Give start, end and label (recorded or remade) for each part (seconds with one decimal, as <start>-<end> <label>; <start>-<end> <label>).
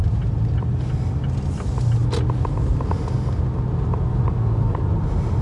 0.0-4.1 recorded; 4.1-4.8 remade; 4.8-5.4 recorded